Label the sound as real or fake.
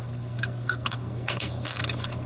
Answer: fake